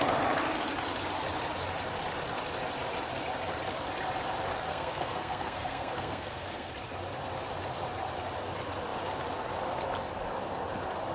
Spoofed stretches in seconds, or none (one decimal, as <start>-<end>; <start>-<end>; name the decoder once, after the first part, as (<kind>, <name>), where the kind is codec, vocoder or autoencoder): 4.7-6.7 (codec, SNAC)